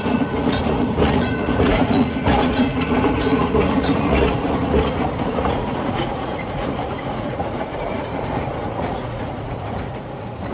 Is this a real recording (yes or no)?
no